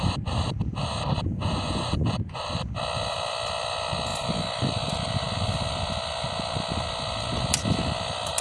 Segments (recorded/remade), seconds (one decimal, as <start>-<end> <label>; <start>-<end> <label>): 0.0-1.3 recorded; 1.3-2.4 remade; 2.4-8.4 recorded